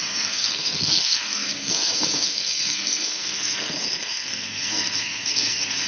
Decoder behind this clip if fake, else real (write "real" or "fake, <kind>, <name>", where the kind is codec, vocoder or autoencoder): fake, codec, SNAC